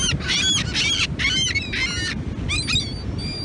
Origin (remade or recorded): recorded